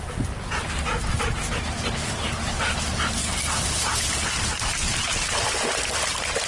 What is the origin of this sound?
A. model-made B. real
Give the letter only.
B